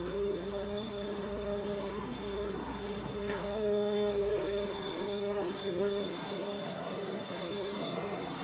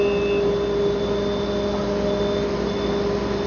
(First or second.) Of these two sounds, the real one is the second